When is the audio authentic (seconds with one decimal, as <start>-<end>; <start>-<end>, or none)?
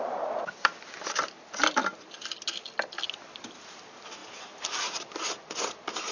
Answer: 0.0-6.1